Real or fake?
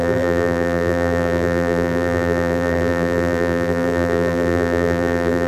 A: fake